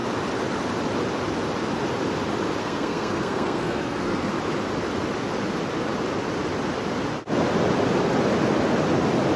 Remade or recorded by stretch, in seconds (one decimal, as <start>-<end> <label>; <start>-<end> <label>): 0.0-2.6 recorded; 2.6-4.3 remade; 4.3-9.4 recorded